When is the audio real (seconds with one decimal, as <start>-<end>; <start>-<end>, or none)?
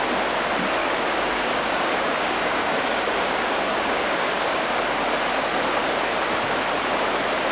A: 0.0-0.8; 4.8-7.5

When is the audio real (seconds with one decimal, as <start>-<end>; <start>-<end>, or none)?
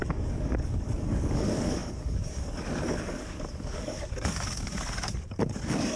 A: none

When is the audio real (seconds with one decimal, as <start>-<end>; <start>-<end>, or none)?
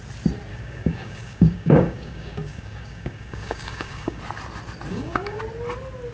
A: 0.0-0.5; 4.2-4.9; 5.4-6.1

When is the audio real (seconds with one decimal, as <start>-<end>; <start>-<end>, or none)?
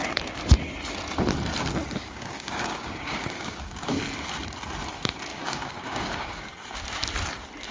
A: 0.0-2.0; 4.0-5.3; 6.5-7.7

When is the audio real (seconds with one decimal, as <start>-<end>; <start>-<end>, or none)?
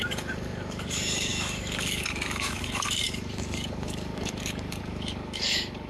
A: none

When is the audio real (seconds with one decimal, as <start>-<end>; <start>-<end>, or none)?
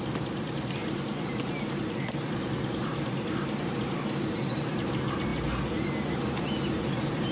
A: 0.0-7.3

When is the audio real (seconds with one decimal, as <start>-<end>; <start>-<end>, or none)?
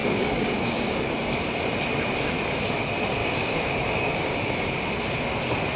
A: 1.1-3.2; 4.5-5.8